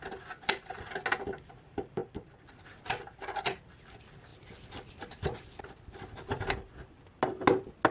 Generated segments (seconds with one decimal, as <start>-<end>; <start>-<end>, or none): none